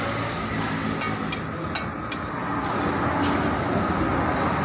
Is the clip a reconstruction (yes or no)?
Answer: no